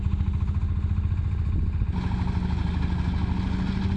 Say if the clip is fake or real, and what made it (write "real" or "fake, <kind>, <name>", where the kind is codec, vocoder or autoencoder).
real